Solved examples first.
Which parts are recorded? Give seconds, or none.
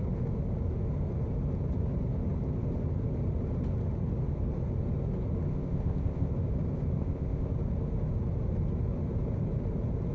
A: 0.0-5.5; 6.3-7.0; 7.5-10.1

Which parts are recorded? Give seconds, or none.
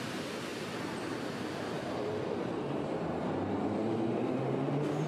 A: 0.0-5.1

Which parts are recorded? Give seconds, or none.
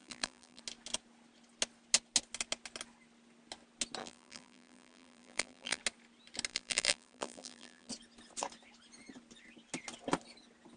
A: 0.6-4.0; 5.8-6.5; 7.9-10.8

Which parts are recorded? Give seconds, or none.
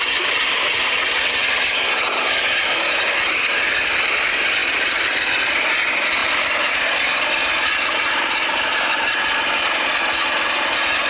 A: 0.0-6.2; 9.9-11.1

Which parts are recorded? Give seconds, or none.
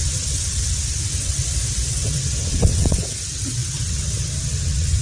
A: 1.4-1.9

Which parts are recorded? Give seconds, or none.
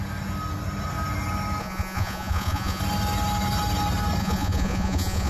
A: 0.0-1.6; 2.8-4.2